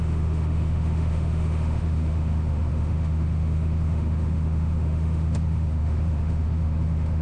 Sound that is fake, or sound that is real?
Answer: fake